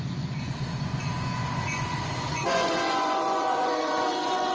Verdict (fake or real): fake